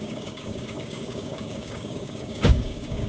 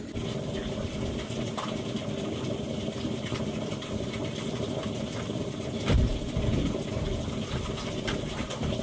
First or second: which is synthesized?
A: first